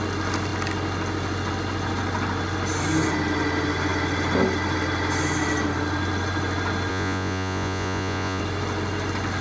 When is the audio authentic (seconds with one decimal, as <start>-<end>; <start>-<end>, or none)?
0.0-6.9; 8.4-9.4